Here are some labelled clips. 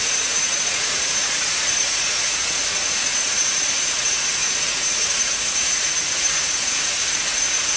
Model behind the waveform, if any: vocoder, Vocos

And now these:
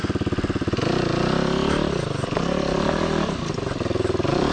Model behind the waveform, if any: vocoder, BigVGAN v2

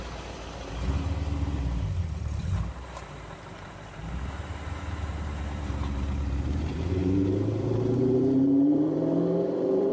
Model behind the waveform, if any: vocoder, BigVGAN v2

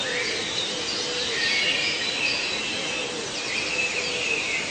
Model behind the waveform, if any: none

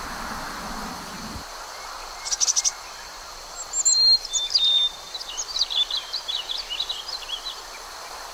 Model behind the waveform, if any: none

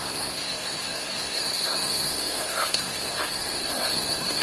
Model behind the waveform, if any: codec, SNAC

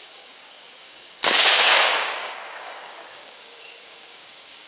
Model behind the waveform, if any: codec, DAC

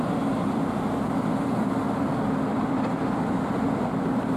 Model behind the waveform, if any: vocoder, BigVGAN v2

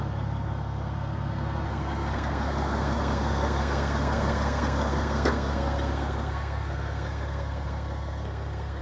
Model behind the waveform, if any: codec, SNAC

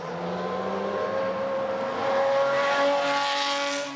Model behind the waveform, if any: none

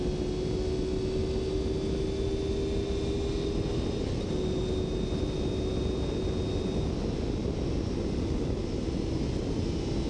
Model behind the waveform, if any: none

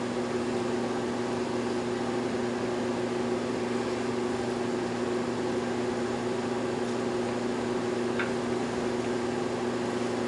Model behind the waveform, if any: none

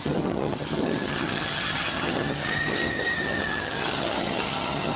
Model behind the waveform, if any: vocoder, HiFi-GAN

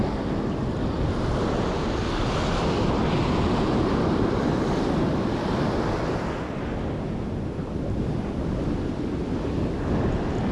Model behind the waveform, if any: none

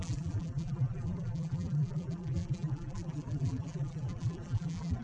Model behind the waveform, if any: vocoder, BigVGAN v2